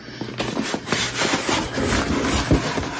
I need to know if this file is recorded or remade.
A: recorded